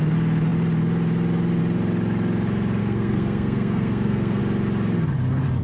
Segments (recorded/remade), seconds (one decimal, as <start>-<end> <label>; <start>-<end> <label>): 0.0-2.8 recorded; 2.8-4.4 remade; 4.4-5.6 recorded